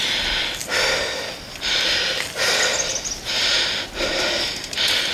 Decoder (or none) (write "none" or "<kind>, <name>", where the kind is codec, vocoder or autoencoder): none